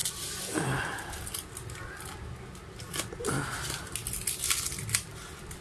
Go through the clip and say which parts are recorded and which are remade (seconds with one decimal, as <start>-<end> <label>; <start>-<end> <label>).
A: 0.0-5.6 recorded